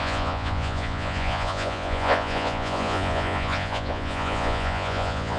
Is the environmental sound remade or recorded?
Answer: remade